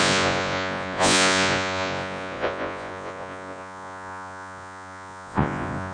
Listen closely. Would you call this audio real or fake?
fake